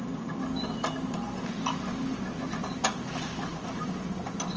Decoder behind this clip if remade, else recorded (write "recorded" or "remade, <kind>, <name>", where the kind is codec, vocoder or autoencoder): recorded